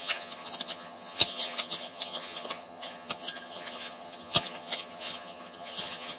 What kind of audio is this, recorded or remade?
remade